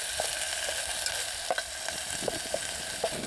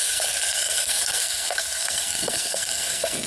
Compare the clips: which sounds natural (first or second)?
first